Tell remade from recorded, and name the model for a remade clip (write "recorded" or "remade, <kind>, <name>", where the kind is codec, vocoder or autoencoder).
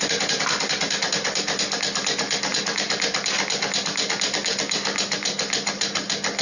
recorded